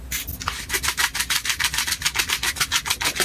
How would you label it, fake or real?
real